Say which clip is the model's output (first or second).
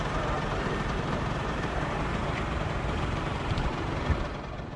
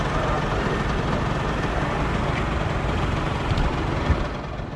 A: first